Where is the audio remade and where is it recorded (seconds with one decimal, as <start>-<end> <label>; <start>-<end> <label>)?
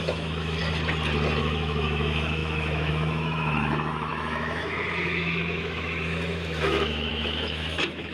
0.0-0.6 remade; 0.6-1.4 recorded; 1.4-8.1 remade